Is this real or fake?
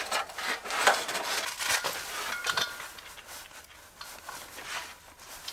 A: real